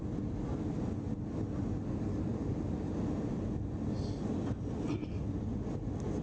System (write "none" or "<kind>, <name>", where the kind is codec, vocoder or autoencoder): none